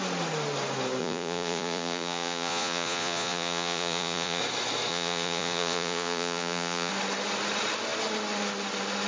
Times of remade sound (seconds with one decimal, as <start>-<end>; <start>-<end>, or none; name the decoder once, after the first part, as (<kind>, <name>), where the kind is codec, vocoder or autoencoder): 1.0-4.4 (vocoder, Vocos); 4.9-6.9